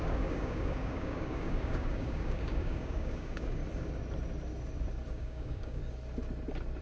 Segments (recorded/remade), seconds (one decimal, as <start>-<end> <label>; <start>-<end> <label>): 0.0-3.6 remade; 3.6-5.1 recorded; 5.1-5.8 remade; 5.8-6.8 recorded